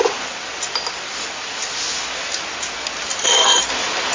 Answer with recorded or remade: recorded